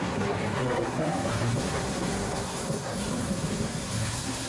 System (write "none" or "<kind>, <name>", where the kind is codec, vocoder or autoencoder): codec, SNAC